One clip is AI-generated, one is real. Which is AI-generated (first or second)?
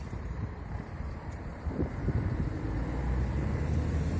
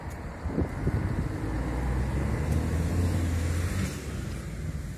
first